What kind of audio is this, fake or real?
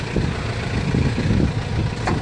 real